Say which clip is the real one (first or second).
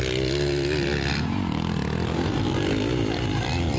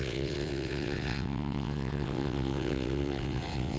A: first